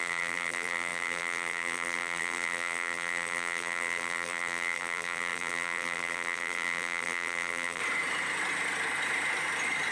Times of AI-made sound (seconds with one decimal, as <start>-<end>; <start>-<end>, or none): 0.0-7.8